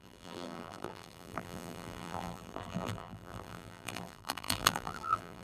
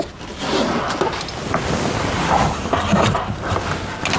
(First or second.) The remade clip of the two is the first